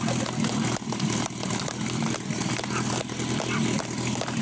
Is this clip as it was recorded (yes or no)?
yes